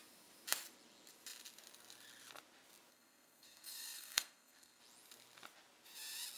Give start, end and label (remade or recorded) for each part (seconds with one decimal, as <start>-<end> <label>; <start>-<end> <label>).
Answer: 0.0-2.9 recorded; 2.9-4.8 remade; 4.8-6.4 recorded

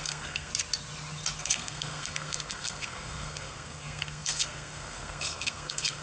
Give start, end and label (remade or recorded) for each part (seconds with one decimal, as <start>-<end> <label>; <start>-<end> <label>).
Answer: 0.0-0.5 remade; 0.5-1.4 recorded; 1.4-6.0 remade

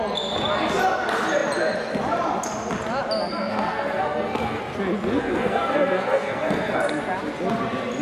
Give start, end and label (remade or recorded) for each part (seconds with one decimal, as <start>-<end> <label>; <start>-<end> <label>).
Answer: 0.0-3.5 recorded; 3.5-4.6 remade; 4.6-5.2 recorded; 5.2-7.0 remade; 7.0-8.0 recorded

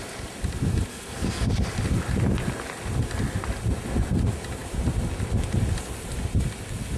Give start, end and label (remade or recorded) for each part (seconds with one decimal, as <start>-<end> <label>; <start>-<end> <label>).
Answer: 0.0-0.9 recorded; 0.9-1.5 remade; 1.5-7.0 recorded

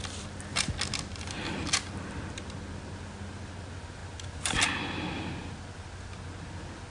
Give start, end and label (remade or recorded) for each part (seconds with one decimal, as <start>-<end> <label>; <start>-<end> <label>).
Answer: 0.0-6.9 recorded